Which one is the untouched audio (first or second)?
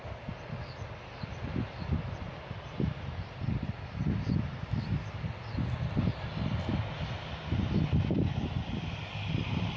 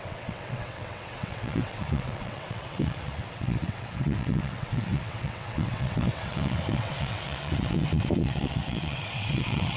first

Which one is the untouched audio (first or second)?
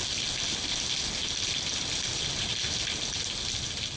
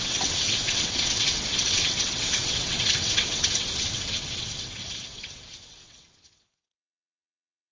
first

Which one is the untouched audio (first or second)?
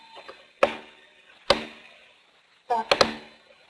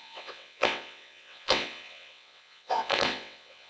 first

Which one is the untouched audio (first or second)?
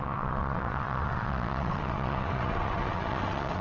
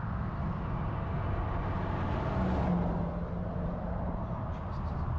second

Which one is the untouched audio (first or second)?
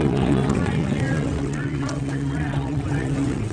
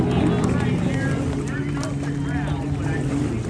second